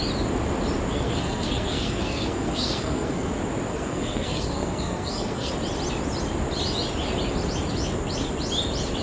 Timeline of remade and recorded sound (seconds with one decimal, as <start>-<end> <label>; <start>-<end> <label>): 0.0-0.9 recorded; 0.9-3.3 remade; 3.3-3.7 recorded; 3.7-5.5 remade; 5.5-9.0 recorded